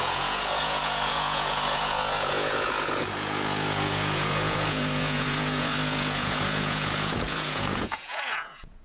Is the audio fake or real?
fake